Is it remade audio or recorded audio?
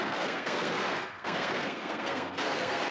remade